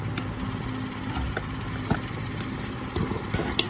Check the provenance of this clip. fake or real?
real